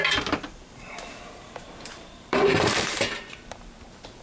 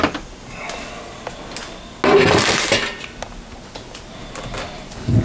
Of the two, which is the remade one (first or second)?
first